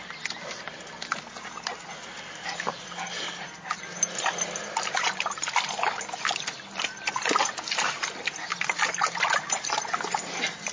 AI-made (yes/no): no